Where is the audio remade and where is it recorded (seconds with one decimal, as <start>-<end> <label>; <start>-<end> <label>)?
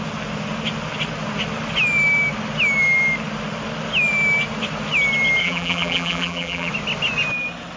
0.0-5.4 recorded; 5.4-6.7 remade; 6.7-7.8 recorded